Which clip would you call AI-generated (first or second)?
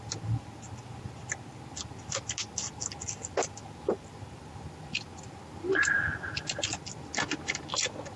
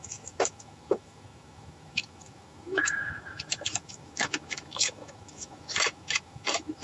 second